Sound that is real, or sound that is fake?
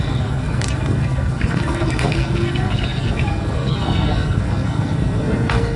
fake